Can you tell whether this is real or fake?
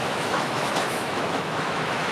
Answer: fake